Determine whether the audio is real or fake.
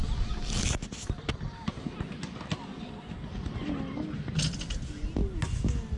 real